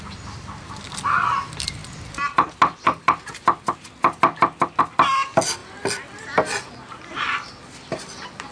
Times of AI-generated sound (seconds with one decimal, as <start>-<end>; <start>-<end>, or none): none